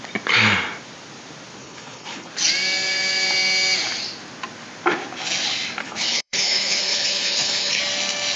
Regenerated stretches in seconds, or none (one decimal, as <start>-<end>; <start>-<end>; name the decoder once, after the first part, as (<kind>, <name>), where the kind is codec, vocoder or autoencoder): 1.6-2.3 (codec, HILCodec); 5.8-7.8